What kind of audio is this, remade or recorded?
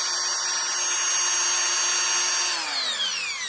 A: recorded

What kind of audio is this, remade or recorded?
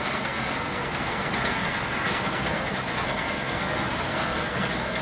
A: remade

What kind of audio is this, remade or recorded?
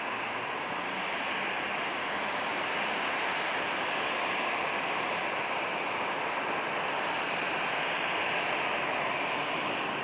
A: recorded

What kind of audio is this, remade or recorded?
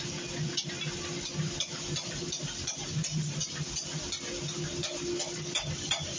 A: recorded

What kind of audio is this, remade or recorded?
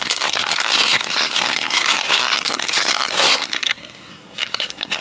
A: remade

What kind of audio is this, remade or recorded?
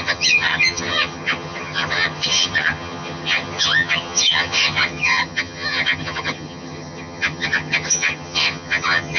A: remade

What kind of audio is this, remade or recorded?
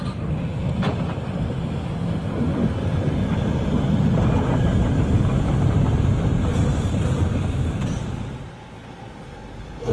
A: recorded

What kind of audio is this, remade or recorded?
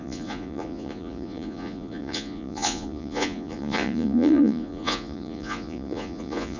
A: remade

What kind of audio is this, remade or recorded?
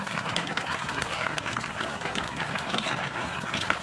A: remade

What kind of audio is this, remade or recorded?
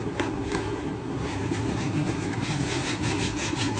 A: remade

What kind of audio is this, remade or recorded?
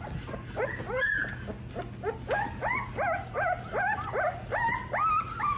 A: recorded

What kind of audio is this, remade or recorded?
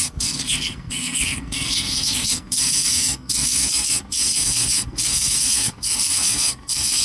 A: remade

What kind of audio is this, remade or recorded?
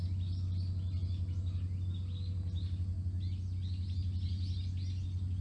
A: recorded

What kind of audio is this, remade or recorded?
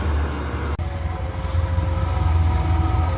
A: recorded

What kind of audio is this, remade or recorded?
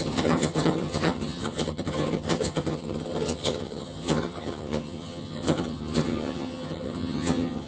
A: remade